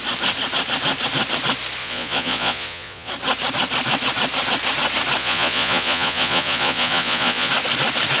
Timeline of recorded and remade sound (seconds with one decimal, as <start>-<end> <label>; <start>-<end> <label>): 0.0-1.8 recorded; 1.8-3.1 remade; 3.1-5.2 recorded; 5.2-7.5 remade; 7.5-8.2 recorded